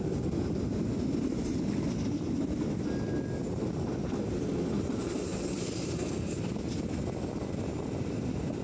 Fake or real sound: real